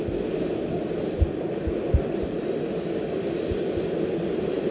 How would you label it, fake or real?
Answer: real